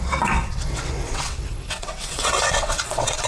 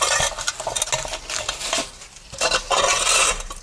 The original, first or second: second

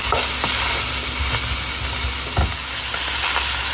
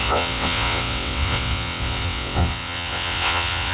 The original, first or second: first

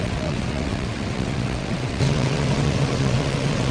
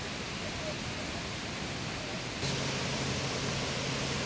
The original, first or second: second